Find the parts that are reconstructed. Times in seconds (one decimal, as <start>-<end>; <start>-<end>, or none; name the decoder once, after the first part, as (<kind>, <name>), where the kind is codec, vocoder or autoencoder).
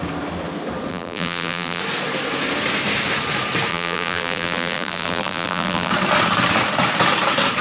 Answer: 0.9-1.8 (vocoder, BigVGAN v2); 3.7-5.9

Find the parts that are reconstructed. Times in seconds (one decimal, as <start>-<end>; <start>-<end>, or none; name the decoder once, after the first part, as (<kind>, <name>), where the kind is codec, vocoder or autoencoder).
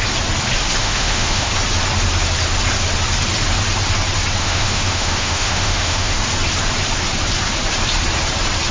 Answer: 0.8-1.5 (autoencoder, DAC-VAE); 4.4-6.2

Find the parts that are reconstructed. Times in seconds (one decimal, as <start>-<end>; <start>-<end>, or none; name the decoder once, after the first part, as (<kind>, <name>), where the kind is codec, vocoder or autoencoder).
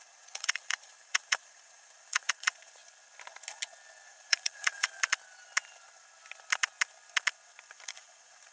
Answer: 0.0-2.8 (vocoder, Vocos); 4.1-4.9; 7.7-8.5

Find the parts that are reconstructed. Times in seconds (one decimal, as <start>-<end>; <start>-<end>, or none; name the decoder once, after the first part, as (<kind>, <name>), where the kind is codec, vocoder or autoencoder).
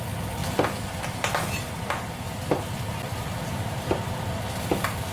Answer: none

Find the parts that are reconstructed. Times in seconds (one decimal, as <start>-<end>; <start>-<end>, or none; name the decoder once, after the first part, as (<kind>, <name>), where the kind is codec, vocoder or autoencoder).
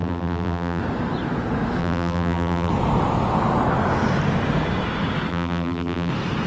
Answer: 0.0-0.8 (vocoder, BigVGAN v2); 1.8-2.7; 5.3-6.1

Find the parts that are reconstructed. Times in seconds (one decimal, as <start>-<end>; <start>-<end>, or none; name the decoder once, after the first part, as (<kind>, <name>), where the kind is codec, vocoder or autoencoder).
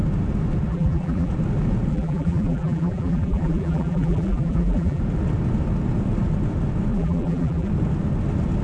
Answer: 0.7-1.3 (vocoder, BigVGAN v2); 1.9-5.0; 6.9-7.7